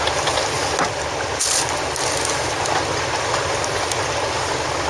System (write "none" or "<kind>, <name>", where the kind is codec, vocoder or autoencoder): none